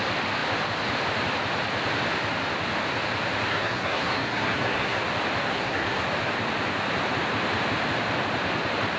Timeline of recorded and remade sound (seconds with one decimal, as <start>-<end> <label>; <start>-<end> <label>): 0.0-3.5 recorded; 3.5-5.0 remade; 5.0-5.5 recorded; 5.5-6.1 remade; 6.1-9.0 recorded